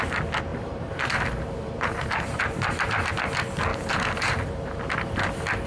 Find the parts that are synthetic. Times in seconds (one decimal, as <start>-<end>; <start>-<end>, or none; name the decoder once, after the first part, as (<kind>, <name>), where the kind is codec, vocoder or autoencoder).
0.5-3.1 (vocoder, BigVGAN v2); 3.7-4.8